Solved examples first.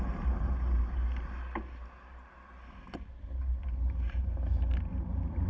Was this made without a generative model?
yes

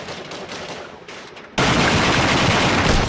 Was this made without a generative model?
yes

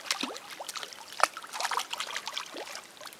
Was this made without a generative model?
yes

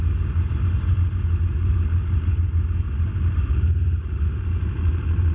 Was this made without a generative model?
yes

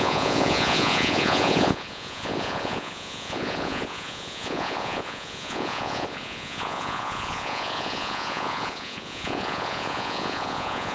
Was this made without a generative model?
no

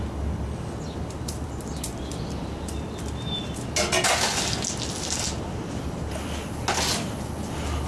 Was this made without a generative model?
yes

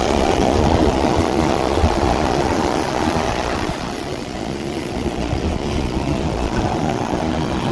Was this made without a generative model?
no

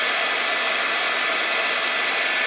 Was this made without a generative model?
yes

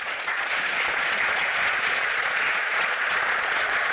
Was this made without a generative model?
no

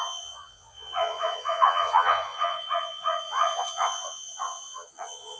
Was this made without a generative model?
no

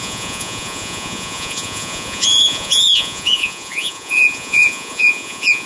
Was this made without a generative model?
no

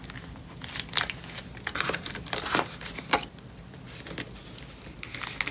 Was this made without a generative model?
yes